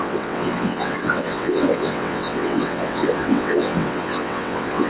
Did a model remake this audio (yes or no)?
yes